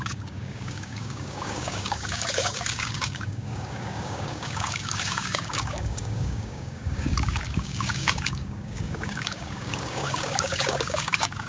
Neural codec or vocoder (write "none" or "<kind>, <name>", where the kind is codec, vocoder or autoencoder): codec, DAC